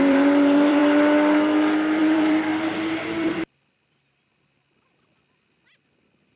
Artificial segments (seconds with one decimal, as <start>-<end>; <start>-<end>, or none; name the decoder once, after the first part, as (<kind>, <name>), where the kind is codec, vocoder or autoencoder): 0.0-0.8 (vocoder, BigVGAN v2); 2.0-6.4